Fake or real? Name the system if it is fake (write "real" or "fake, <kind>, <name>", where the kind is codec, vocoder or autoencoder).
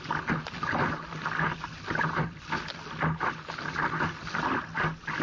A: real